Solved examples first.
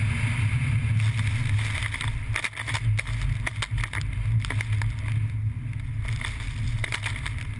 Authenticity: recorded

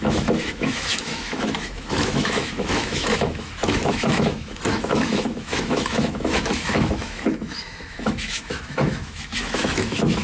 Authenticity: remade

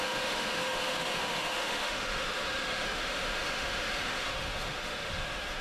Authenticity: remade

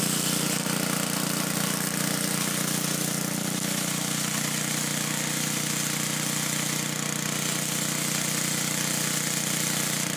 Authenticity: recorded